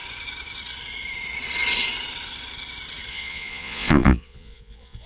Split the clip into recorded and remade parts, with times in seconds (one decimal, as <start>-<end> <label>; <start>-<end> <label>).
0.0-3.1 recorded; 3.1-5.1 remade